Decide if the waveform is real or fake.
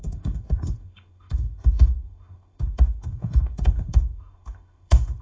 fake